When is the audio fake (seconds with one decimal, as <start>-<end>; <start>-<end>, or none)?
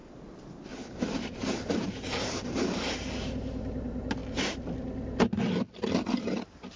1.7-4.2; 6.1-6.8